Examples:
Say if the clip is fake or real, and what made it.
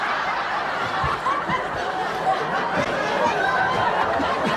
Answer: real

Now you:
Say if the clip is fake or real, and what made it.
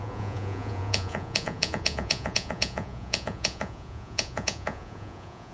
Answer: fake, vocoder, Vocos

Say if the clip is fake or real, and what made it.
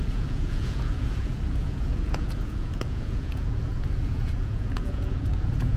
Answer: fake, vocoder, Vocos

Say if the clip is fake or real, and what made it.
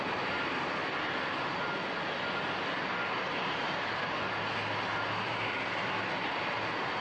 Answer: real